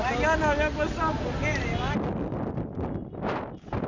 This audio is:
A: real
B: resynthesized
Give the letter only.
A